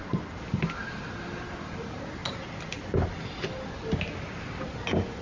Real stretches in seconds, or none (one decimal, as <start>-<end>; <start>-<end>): 0.0-1.6; 2.2-4.4